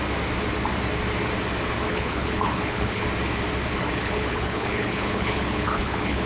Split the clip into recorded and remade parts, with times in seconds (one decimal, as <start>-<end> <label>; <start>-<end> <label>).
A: 0.0-1.9 recorded; 1.9-3.0 remade; 3.0-3.8 recorded; 3.8-6.3 remade